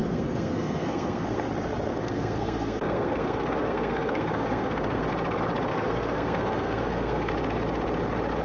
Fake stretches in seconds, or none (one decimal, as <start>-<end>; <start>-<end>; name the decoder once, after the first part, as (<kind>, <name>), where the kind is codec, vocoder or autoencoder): 0.0-1.5 (codec, SNAC); 1.9-5.1; 5.7-7.3